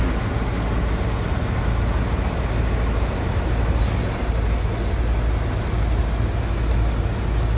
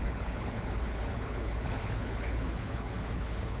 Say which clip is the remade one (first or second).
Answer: second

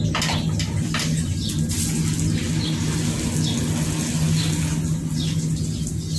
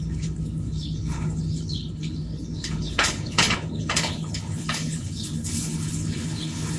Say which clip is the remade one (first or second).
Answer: second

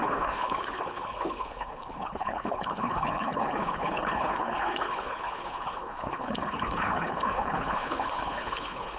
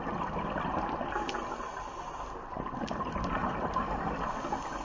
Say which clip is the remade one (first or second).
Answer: first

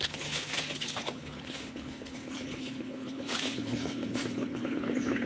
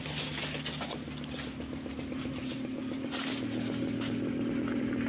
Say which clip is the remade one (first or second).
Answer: first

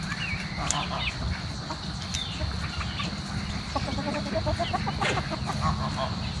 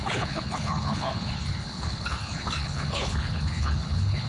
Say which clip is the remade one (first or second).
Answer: second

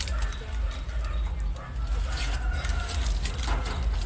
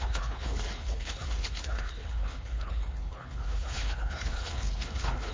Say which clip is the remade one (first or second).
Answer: second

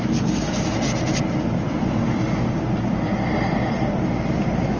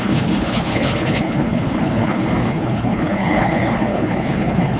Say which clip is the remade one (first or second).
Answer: second